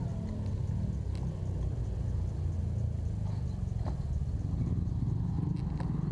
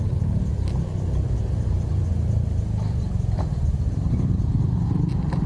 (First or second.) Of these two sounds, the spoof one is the second